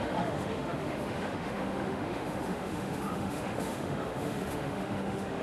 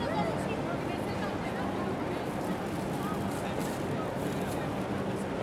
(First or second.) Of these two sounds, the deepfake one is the first